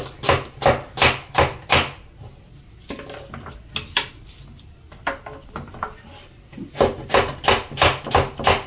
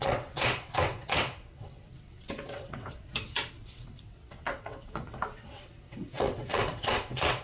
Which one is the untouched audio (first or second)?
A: first